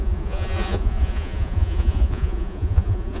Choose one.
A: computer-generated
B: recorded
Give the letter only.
A